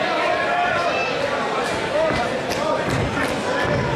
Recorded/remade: recorded